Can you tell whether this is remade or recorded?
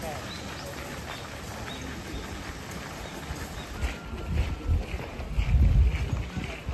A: recorded